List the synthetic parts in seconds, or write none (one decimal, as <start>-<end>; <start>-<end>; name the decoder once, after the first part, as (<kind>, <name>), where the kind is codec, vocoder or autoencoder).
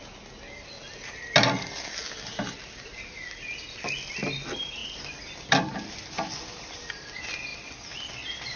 2.6-3.8 (vocoder, BigVGAN v2); 4.8-6.9; 7.5-8.1